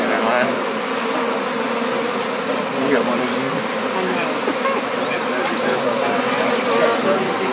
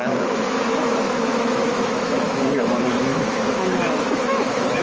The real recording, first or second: first